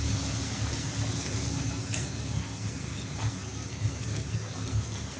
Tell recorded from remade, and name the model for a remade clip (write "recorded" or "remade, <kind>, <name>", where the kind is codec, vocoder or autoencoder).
remade, codec, SNAC